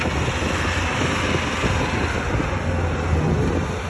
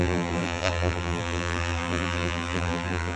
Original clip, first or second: first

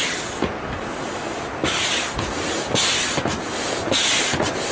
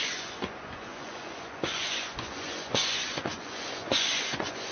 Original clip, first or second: first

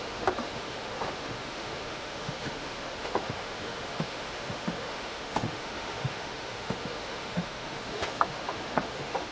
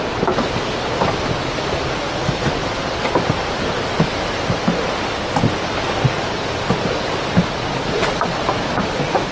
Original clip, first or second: second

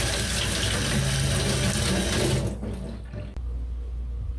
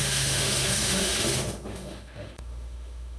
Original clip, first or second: first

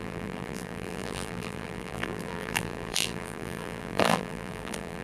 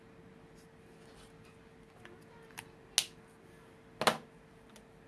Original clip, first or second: second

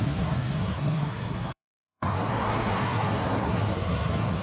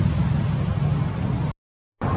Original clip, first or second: second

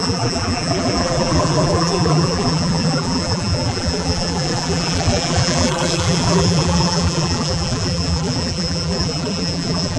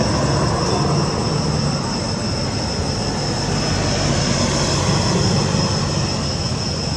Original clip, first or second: second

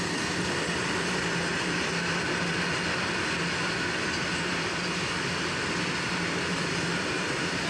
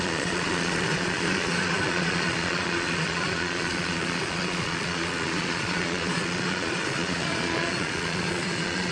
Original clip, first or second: first